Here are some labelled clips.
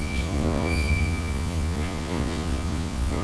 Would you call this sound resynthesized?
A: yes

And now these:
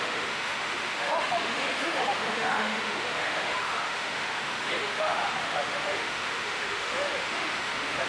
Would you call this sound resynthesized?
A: yes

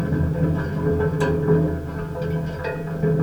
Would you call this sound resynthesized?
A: no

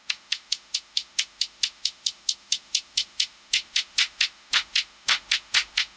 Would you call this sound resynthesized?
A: yes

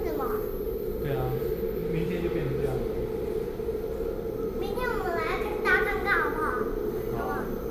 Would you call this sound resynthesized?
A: no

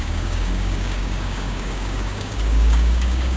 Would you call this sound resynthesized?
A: yes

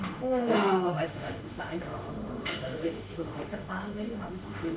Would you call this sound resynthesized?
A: yes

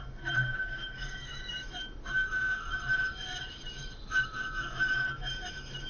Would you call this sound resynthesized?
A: yes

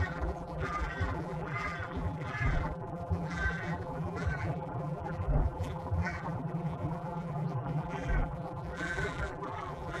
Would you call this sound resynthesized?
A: yes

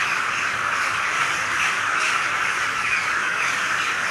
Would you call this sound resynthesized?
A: yes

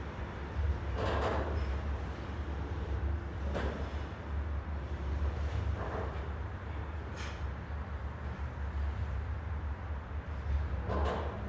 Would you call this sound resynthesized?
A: no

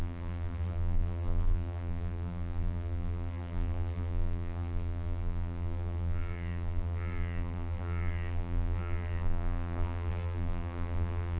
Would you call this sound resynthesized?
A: yes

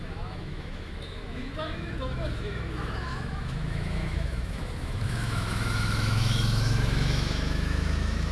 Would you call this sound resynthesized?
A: yes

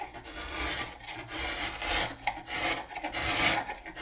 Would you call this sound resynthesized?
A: no